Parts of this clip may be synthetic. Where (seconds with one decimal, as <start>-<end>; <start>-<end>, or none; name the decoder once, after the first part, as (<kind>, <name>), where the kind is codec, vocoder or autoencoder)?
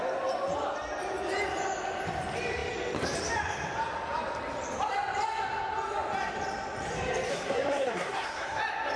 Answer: 7.3-8.6 (codec, SNAC)